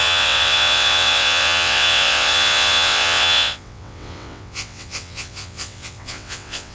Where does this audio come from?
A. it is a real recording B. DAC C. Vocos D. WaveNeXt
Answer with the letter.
D